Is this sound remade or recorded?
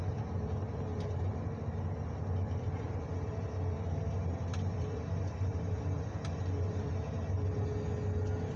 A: recorded